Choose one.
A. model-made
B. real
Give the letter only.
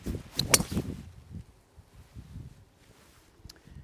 B